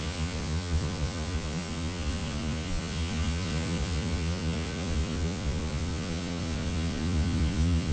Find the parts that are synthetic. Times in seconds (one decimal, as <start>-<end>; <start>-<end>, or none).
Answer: 0.0-7.9